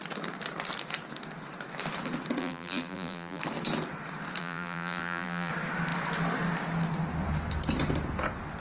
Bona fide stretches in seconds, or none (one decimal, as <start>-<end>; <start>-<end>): 0.0-2.4; 3.4-4.4; 5.5-8.6